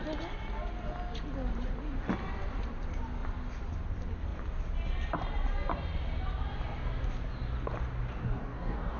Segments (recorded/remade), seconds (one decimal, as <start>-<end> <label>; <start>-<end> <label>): 0.0-8.2 recorded; 8.2-9.0 remade